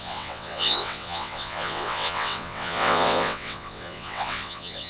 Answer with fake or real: fake